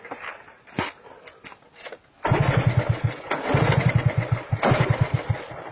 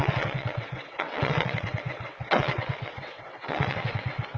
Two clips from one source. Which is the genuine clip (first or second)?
first